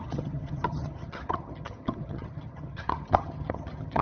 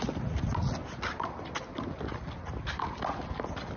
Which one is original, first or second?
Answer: second